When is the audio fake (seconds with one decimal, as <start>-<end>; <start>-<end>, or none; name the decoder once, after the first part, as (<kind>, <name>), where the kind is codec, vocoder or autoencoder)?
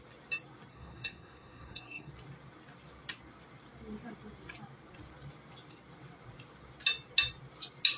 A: 0.7-2.1 (codec, SNAC)